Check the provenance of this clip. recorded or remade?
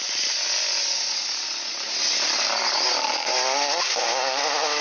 recorded